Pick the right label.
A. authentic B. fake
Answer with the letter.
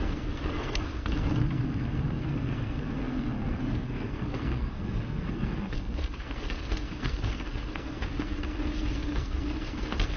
B